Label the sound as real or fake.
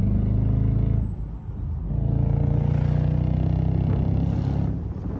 real